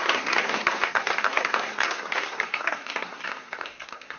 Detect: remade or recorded remade